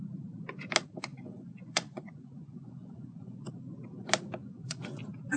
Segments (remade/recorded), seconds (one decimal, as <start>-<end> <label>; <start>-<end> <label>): 0.0-1.1 recorded; 1.1-3.5 remade; 3.5-4.4 recorded; 4.4-5.0 remade; 5.0-5.4 recorded